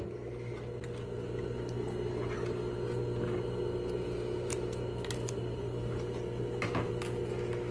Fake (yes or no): no